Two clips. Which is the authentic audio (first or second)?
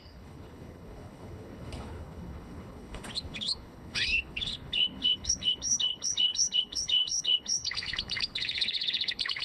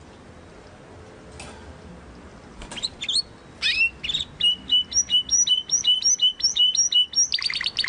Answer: second